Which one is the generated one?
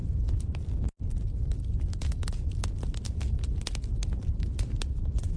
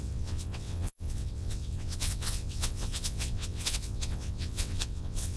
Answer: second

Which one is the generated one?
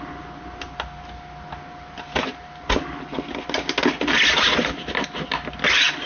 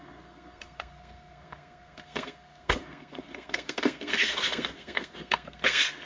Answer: second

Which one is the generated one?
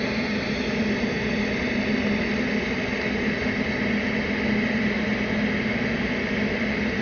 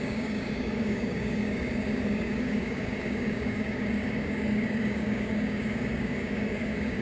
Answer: second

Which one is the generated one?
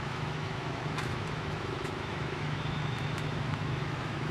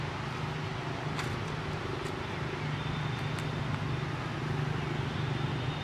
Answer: first